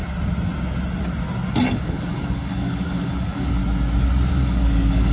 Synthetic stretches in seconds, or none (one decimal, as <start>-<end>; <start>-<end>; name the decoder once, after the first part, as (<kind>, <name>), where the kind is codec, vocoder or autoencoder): 1.7-3.6 (codec, DAC); 4.3-5.1